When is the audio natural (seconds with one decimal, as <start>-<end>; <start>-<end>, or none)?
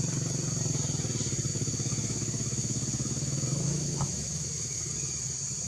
0.0-1.5; 4.9-5.7